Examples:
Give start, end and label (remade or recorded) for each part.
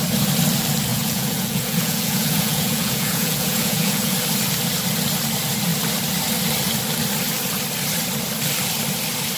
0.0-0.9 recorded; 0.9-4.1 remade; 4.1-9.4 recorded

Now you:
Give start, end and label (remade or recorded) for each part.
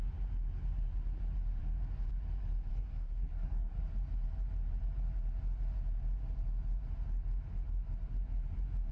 0.0-2.7 recorded; 2.7-3.8 remade; 3.8-8.9 recorded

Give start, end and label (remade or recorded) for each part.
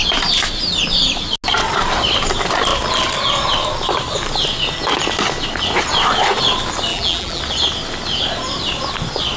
0.0-6.9 recorded; 6.9-7.4 remade; 7.4-9.4 recorded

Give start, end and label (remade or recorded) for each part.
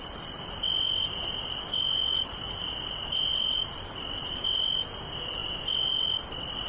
0.0-6.7 recorded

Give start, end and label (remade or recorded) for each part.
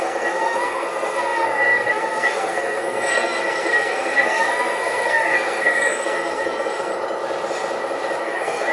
0.0-6.9 remade; 6.9-8.2 recorded; 8.2-8.7 remade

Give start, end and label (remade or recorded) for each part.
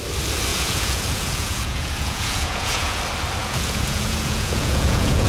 0.0-0.5 recorded; 0.5-3.0 remade; 3.0-3.4 recorded; 3.4-5.3 remade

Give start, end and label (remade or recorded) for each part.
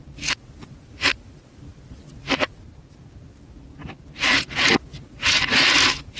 0.0-6.2 recorded